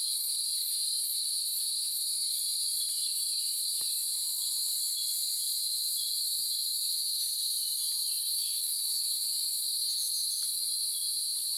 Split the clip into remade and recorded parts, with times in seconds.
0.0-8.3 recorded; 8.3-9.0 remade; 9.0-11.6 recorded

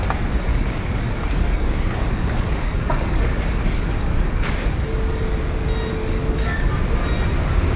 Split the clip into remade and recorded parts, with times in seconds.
0.0-0.5 recorded; 0.5-5.2 remade; 5.2-6.0 recorded; 6.0-6.7 remade; 6.7-7.8 recorded

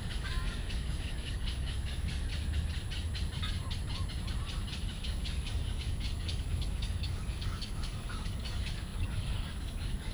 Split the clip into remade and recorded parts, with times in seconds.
0.0-2.3 remade; 2.3-4.9 recorded; 4.9-10.1 remade

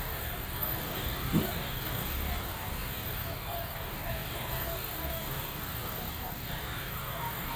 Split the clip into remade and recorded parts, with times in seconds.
0.0-7.6 remade